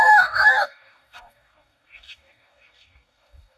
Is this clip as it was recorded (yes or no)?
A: no